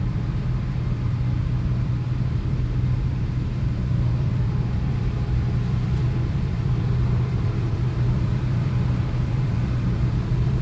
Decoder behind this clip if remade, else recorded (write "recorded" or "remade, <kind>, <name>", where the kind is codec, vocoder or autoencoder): remade, vocoder, BigVGAN v2